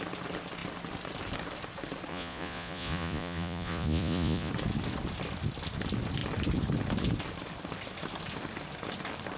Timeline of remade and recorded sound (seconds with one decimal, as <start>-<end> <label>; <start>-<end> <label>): 0.0-2.1 recorded; 2.1-4.5 remade; 4.5-9.4 recorded